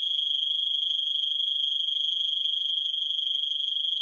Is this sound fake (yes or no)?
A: yes